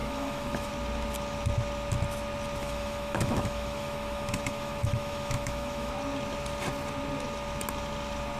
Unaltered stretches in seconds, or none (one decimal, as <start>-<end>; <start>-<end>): 0.7-2.6; 5.9-8.4